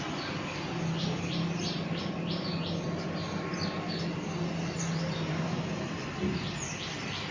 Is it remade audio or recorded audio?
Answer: recorded